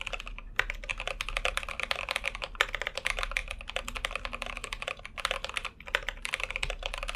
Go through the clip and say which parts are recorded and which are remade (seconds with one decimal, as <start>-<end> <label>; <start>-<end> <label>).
0.0-7.2 recorded